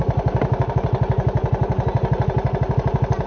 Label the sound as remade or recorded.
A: recorded